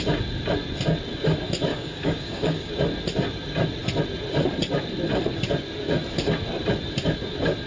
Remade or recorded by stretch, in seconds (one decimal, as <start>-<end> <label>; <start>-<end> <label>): 0.0-1.7 recorded; 1.7-2.7 remade; 2.7-7.7 recorded